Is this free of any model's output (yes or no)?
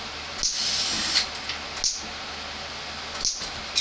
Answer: yes